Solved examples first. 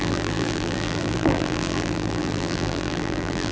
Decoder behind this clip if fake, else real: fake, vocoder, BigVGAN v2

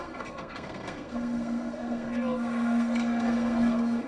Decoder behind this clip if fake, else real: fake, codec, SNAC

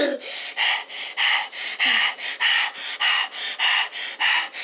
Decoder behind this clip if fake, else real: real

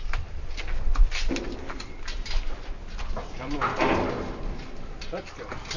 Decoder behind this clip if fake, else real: real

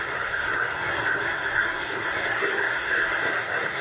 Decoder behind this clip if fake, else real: fake, codec, SNAC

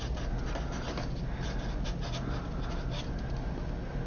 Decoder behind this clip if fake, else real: real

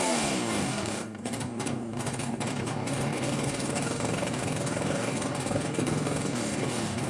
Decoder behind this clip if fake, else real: fake, codec, DAC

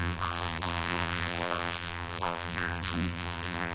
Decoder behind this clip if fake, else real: fake, vocoder, BigVGAN v2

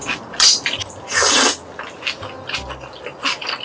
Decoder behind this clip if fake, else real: real